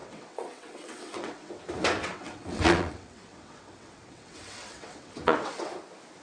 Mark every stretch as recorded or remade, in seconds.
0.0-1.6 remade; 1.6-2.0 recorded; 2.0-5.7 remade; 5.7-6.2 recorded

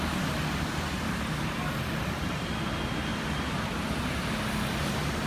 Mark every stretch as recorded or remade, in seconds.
0.0-3.1 recorded; 3.1-4.0 remade; 4.0-5.3 recorded

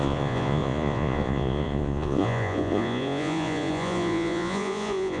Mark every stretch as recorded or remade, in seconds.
0.0-5.2 remade

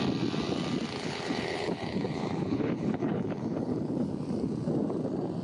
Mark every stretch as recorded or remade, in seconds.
0.0-0.9 recorded; 0.9-4.1 remade; 4.1-5.4 recorded

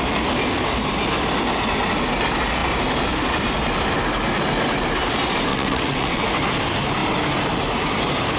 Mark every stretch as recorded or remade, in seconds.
0.0-5.5 recorded; 5.5-6.2 remade; 6.2-8.4 recorded

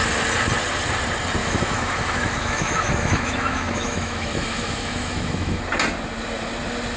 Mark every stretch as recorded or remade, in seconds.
0.0-1.4 recorded; 1.4-5.6 remade; 5.6-7.0 recorded

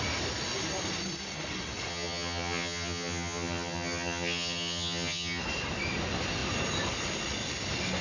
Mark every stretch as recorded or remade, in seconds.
0.0-1.9 recorded; 1.9-5.4 remade; 5.4-8.0 recorded

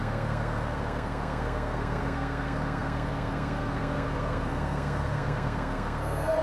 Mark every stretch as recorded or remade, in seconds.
0.0-6.4 remade